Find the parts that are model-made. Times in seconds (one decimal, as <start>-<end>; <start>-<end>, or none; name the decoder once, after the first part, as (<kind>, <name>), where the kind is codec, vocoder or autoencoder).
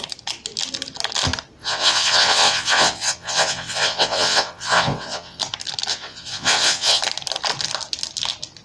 1.6-5.4 (vocoder, WaveNeXt); 5.9-7.0